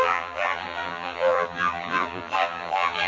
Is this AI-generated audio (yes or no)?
yes